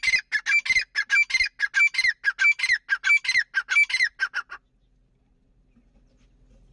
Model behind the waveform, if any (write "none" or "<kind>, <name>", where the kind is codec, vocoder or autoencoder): none